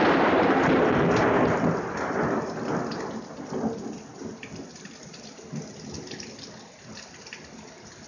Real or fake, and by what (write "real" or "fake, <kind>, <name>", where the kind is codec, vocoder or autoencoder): real